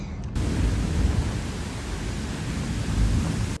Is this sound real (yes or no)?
yes